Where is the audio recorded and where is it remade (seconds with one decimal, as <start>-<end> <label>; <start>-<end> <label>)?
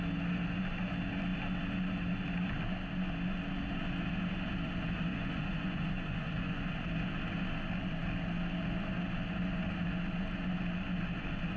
0.0-5.1 recorded; 5.1-6.7 remade; 6.7-11.6 recorded